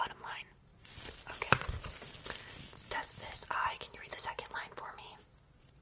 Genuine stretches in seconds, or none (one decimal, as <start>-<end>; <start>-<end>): 0.0-5.8